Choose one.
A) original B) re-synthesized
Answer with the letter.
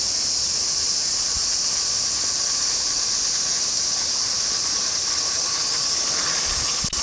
A